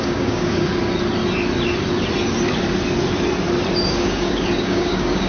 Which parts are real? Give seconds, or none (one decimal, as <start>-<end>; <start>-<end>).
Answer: 0.7-3.9